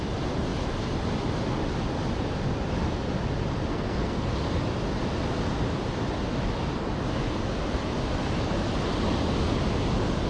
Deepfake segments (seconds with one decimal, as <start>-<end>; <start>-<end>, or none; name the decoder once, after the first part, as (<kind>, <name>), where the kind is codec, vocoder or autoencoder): 3.7-4.3 (codec, SNAC)